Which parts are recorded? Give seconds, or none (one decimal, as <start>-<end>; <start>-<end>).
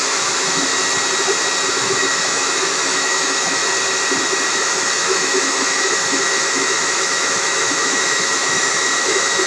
0.7-1.7; 3.6-4.5